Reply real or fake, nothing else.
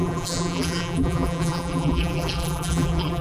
fake